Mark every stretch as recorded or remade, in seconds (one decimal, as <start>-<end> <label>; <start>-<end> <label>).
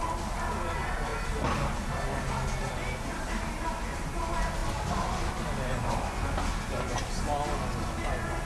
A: 0.0-8.5 recorded